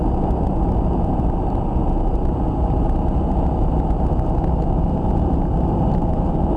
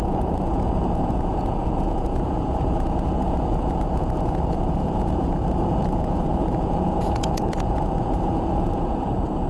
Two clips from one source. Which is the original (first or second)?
first